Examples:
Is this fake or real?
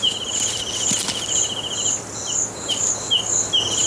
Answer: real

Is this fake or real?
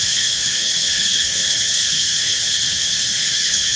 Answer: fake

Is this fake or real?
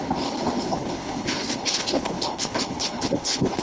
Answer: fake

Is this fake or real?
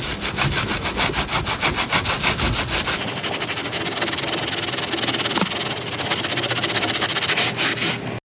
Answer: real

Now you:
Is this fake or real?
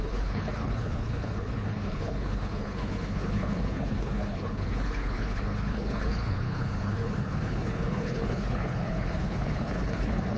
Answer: fake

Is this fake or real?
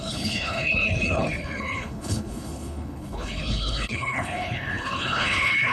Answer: fake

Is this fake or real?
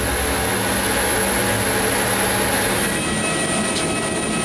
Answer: real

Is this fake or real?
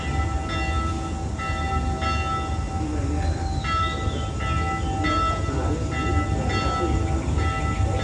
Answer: real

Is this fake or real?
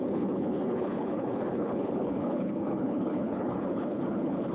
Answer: fake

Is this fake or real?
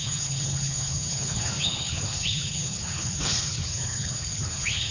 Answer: fake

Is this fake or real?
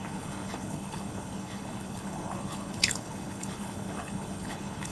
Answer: fake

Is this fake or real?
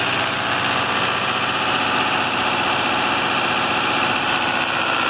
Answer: real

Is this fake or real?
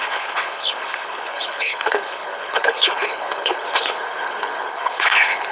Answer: fake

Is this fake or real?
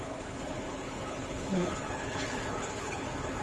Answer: fake